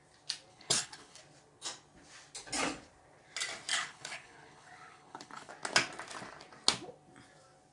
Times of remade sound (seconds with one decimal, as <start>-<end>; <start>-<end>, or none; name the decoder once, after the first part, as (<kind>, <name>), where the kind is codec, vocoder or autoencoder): 0.5-1.2 (codec, HILCodec); 3.7-5.5